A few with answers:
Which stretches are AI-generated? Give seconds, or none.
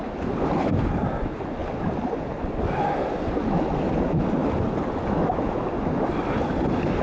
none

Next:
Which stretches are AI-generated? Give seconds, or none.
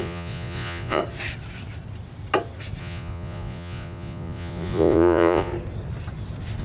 0.0-1.0 (vocoder, Vocos); 2.8-5.5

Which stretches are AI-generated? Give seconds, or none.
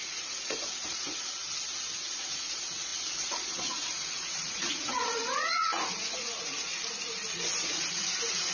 0.0-1.4 (vocoder, Vocos); 2.1-6.7; 7.3-8.5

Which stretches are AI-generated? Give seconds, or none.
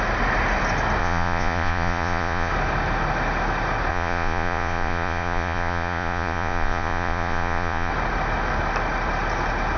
1.0-2.5 (vocoder, Vocos); 3.9-7.9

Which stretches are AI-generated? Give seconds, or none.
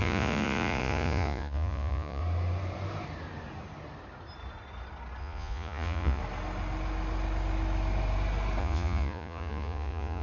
0.0-2.2 (vocoder, Vocos); 5.2-6.2; 8.6-10.2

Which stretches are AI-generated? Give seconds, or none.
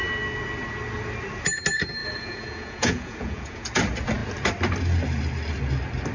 2.0-3.7 (vocoder, Vocos)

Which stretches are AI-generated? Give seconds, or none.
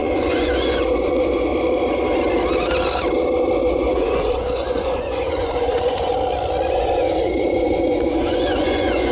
0.0-1.5 (vocoder, Vocos); 3.6-6.1; 6.7-9.1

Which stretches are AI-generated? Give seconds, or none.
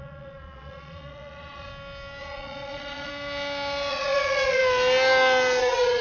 0.0-1.7 (vocoder, Vocos); 2.2-3.1; 3.9-4.6; 5.6-6.0